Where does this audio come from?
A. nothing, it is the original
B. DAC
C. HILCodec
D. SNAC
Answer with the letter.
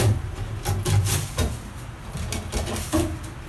A